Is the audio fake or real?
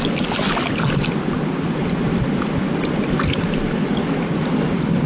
real